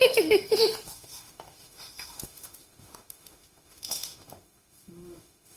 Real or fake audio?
fake